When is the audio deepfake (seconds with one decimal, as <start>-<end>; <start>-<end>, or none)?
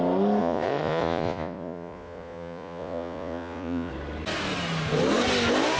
0.4-3.9